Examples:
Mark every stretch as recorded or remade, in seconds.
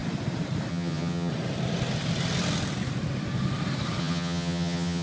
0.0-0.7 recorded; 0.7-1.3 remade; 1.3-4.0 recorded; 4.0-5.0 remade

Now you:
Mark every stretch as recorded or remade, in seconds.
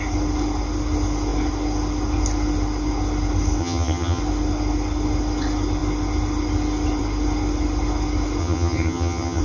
0.0-3.6 recorded; 3.6-4.2 remade; 4.2-8.4 recorded; 8.4-9.4 remade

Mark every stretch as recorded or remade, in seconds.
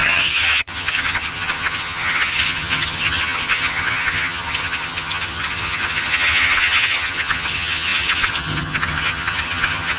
0.0-10.0 remade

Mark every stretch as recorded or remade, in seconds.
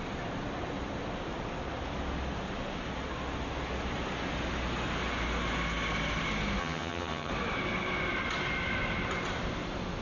0.0-6.6 recorded; 6.6-7.3 remade; 7.3-10.0 recorded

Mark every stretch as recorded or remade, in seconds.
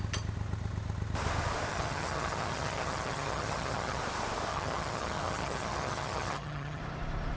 0.0-1.7 recorded; 1.7-4.0 remade; 4.0-4.5 recorded; 4.5-6.8 remade; 6.8-7.4 recorded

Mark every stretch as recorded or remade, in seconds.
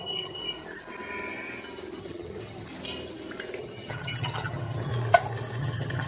0.0-0.4 remade; 0.4-2.0 recorded; 2.0-2.7 remade; 2.7-3.6 recorded; 3.6-4.9 remade; 4.9-5.6 recorded; 5.6-6.1 remade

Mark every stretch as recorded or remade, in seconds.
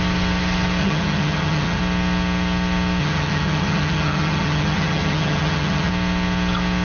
0.0-0.8 recorded; 0.8-1.8 remade; 1.8-3.0 recorded; 3.0-5.9 remade; 5.9-6.8 recorded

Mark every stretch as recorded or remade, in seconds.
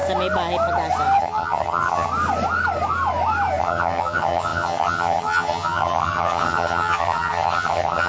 0.0-1.2 recorded; 1.2-2.1 remade; 2.1-3.6 recorded; 3.6-8.1 remade